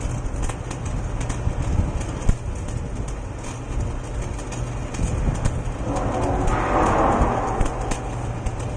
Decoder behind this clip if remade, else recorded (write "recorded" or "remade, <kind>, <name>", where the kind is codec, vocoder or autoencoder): recorded